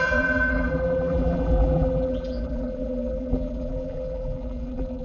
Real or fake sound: fake